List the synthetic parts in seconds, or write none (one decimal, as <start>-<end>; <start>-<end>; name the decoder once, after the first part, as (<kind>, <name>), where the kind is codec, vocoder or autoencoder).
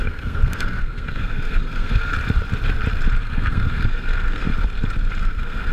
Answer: 0.0-2.1 (codec, SNAC); 3.2-4.5; 5.2-5.7